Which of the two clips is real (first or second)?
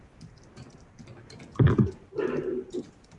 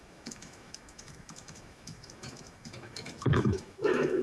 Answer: first